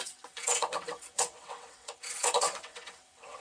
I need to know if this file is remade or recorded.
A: remade